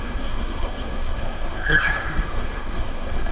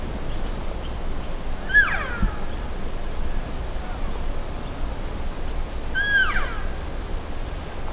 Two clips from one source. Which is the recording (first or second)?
second